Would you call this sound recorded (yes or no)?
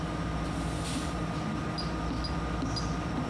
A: yes